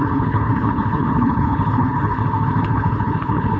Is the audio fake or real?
fake